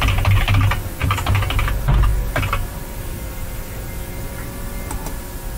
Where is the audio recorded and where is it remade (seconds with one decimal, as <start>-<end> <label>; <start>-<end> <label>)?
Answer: 0.0-5.6 recorded